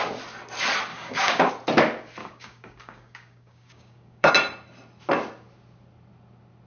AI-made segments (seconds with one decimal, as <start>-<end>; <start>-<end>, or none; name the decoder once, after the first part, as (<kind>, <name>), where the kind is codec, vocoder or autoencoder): 0.9-1.5 (codec, DAC); 2.2-4.3